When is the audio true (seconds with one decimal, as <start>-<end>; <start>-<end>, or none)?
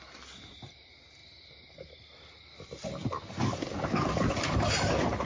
0.0-5.2